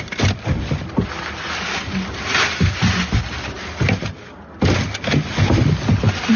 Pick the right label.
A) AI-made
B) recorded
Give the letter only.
B